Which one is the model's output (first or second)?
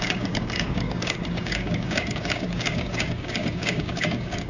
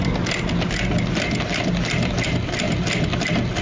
first